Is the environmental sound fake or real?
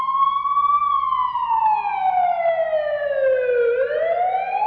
real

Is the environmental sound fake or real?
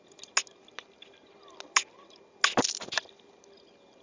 real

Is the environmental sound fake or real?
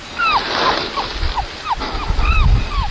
real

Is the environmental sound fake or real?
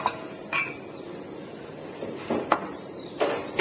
fake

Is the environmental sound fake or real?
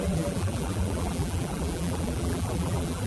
fake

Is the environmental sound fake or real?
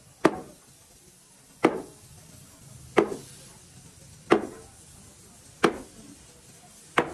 real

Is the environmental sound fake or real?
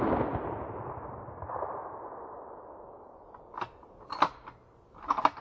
real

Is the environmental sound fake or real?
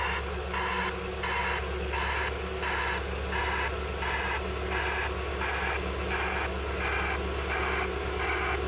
real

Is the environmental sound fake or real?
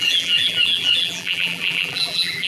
fake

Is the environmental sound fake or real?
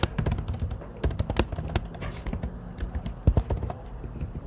real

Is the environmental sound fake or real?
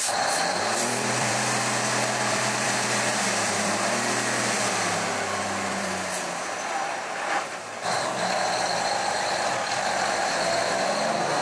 fake